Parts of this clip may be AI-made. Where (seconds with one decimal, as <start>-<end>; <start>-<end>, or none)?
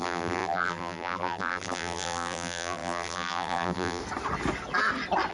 0.0-4.0